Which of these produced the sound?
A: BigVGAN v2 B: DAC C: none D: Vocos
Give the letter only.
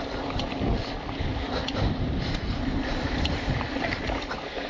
A